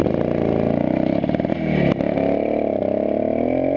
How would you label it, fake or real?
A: real